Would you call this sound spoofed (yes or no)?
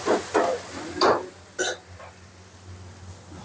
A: no